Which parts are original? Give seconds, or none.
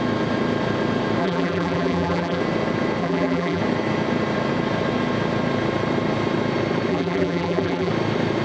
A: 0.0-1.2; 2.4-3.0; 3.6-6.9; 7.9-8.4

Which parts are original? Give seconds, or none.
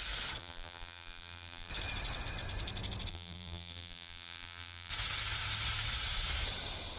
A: 0.0-0.4; 1.7-3.1; 4.9-7.0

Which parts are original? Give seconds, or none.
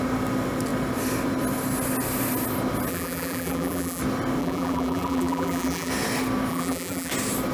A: 0.0-2.9; 4.0-4.4; 5.9-6.5; 7.1-7.5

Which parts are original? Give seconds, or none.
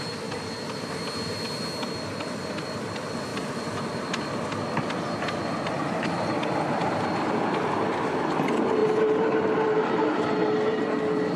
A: 0.0-11.4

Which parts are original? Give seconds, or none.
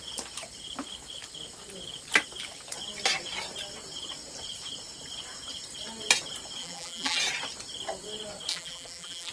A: 0.0-6.6; 7.2-8.5